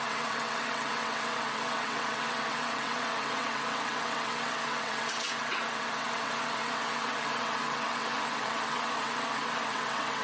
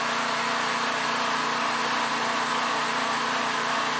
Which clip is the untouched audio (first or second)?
second